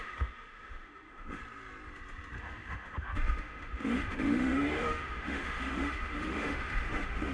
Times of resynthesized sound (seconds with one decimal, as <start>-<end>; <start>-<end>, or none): 0.0-1.4; 2.4-7.3